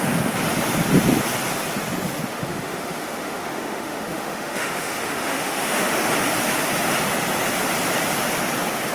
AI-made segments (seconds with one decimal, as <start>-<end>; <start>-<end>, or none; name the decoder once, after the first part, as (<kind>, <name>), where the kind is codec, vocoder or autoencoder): 2.3-6.1 (autoencoder, DAC-VAE)